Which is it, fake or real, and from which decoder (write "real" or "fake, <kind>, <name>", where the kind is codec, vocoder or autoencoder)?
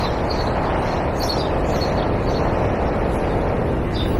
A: real